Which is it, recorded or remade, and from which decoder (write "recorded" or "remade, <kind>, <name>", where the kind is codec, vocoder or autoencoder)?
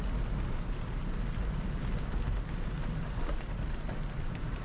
recorded